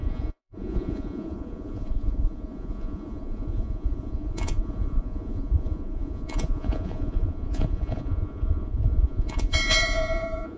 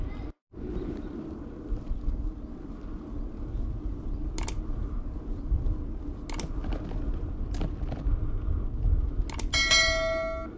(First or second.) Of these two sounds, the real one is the second